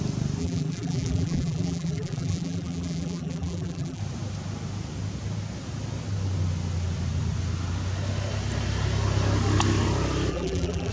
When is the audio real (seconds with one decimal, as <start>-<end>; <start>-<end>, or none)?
0.0-0.4; 4.0-10.3